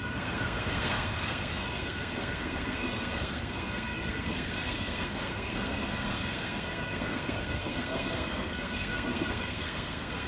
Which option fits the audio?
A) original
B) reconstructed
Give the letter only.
B